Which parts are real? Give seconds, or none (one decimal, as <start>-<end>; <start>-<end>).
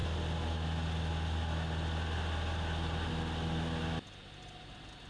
0.0-5.1